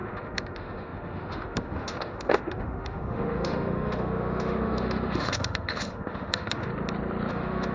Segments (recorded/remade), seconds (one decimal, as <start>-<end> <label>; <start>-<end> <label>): 0.0-6.7 remade; 6.7-7.3 recorded; 7.3-7.7 remade